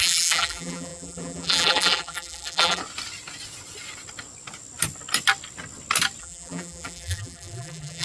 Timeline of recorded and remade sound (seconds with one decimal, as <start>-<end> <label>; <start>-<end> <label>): 0.0-2.8 remade; 2.8-6.2 recorded; 6.2-8.0 remade